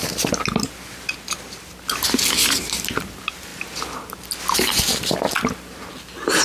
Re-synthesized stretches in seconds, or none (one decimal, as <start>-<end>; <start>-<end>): none